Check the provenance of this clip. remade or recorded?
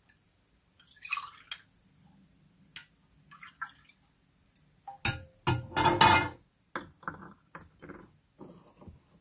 recorded